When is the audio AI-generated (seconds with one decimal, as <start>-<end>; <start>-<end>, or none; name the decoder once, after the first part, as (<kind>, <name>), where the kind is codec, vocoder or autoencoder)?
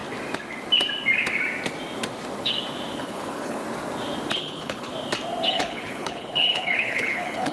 3.0-3.6 (codec, HILCodec); 4.4-4.9; 5.5-7.5